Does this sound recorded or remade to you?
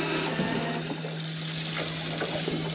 recorded